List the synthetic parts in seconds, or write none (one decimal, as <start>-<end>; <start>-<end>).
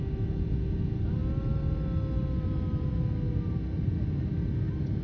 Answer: none